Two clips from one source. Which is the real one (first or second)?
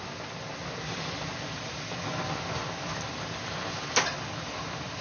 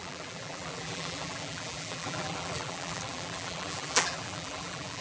first